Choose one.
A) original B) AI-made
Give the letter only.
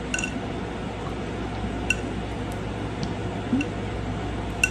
A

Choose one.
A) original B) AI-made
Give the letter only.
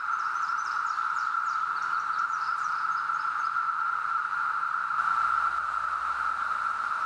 B